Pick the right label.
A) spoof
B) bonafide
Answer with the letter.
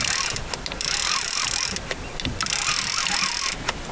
B